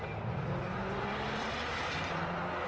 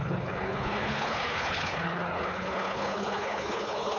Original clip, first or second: first